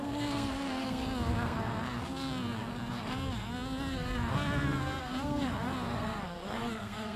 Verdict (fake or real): fake